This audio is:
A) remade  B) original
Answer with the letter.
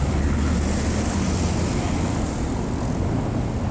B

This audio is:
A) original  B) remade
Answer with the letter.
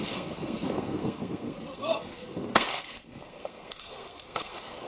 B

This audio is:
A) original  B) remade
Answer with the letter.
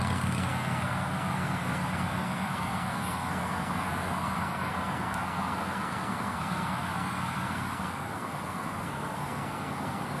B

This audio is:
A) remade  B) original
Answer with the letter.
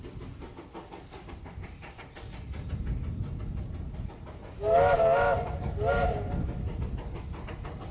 B